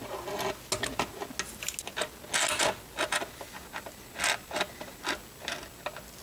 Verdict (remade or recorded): recorded